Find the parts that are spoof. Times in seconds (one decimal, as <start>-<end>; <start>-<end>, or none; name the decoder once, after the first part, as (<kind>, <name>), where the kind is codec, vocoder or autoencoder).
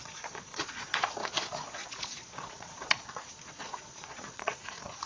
0.0-5.1 (vocoder, Vocos)